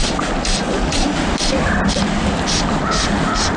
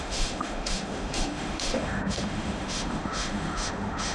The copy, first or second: second